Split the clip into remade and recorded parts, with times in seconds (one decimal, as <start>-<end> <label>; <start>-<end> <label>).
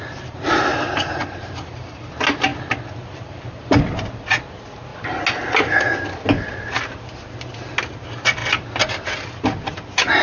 0.0-0.7 recorded; 0.7-2.1 remade; 2.1-2.5 recorded; 2.5-3.8 remade; 3.8-10.2 recorded